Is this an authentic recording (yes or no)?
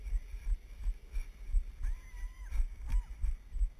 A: no